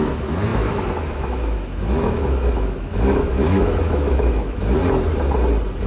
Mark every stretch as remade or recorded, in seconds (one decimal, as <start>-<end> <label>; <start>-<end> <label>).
0.0-4.8 remade; 4.8-5.9 recorded